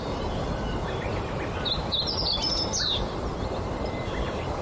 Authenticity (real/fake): real